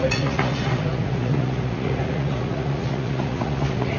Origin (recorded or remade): remade